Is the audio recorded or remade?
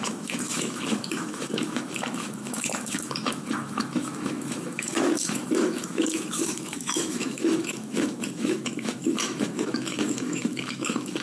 remade